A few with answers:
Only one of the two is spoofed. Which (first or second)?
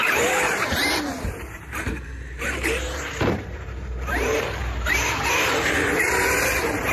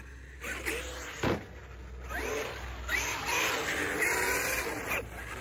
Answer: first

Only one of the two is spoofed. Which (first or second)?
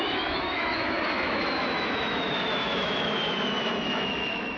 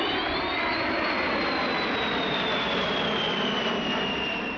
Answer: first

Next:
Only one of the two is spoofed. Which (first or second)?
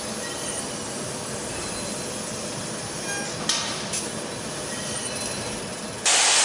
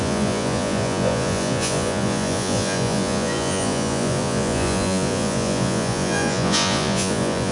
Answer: second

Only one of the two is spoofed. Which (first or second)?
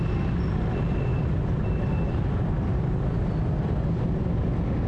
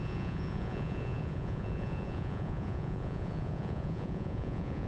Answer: second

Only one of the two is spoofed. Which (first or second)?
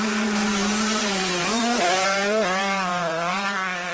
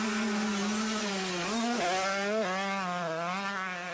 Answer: first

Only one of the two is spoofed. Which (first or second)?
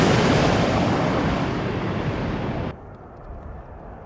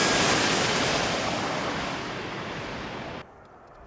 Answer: first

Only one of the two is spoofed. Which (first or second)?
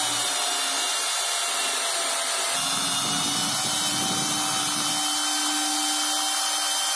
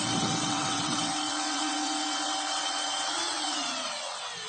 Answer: second